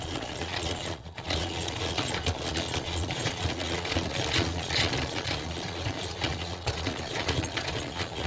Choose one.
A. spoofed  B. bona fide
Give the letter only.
A